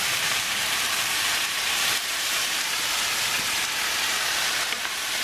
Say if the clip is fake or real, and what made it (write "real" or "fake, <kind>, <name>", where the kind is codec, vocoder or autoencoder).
fake, vocoder, BigVGAN v2